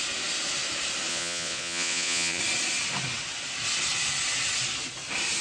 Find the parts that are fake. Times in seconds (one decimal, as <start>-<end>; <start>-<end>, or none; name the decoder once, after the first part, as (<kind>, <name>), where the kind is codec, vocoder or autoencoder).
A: 1.1-2.4 (vocoder, Vocos)